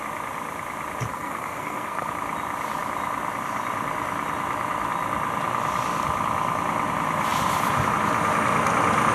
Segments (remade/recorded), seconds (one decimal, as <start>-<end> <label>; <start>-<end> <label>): 0.0-1.1 recorded; 1.1-2.1 remade; 2.1-9.1 recorded